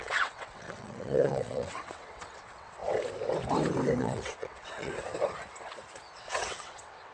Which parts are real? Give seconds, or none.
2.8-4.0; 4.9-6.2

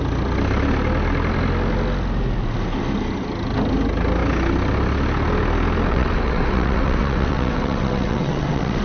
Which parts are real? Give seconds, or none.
0.0-5.9

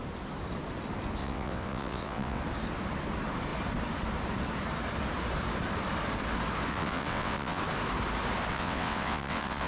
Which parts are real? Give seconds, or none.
0.0-1.2; 2.4-6.7; 7.6-8.5

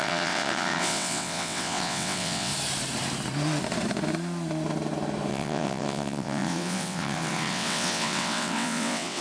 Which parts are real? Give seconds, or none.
2.5-5.3